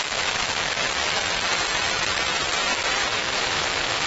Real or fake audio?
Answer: fake